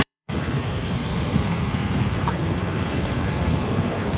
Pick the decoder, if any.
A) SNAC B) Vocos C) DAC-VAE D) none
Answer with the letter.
A